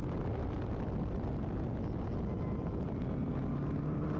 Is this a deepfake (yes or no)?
no